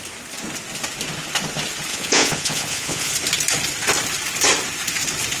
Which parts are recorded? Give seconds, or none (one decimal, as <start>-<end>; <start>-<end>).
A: 0.0-1.9; 3.1-5.4